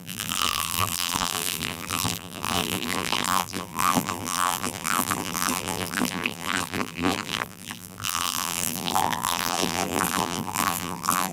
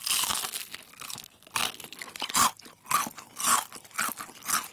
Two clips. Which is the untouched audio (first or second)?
second